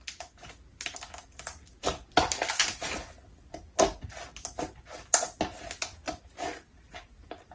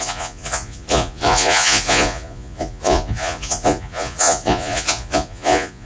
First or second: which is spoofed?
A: second